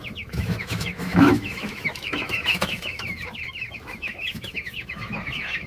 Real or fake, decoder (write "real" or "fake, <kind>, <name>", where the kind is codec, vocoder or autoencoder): fake, autoencoder, DAC-VAE